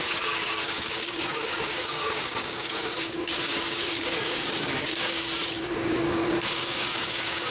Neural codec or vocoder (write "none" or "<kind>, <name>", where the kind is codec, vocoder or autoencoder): codec, DAC